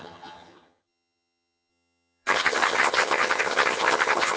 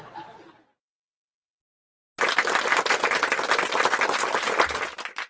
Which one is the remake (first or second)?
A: first